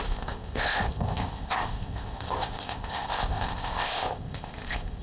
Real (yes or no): no